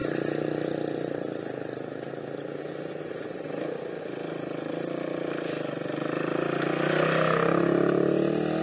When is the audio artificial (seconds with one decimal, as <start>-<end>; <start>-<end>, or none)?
none